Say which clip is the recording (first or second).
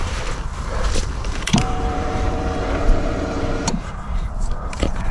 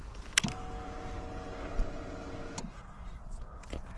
second